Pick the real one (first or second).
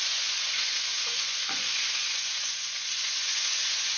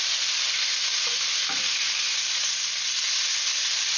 second